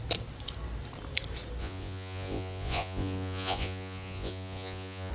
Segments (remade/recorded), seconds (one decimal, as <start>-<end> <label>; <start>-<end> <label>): 0.0-1.6 recorded; 1.6-5.1 remade